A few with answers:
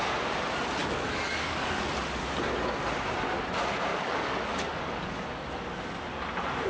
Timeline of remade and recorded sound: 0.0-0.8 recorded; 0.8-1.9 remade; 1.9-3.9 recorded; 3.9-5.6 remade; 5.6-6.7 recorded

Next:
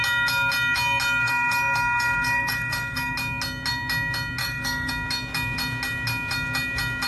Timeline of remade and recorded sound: 0.0-1.2 recorded; 1.2-3.1 remade; 3.1-4.4 recorded; 4.4-4.9 remade; 4.9-7.1 recorded

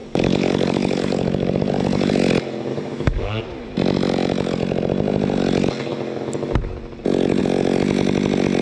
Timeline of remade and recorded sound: 0.0-2.1 remade; 2.1-2.7 recorded; 2.7-3.4 remade; 3.4-8.6 recorded

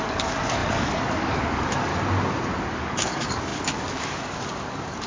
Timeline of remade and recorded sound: 0.0-1.9 remade; 1.9-2.6 recorded; 2.6-5.1 remade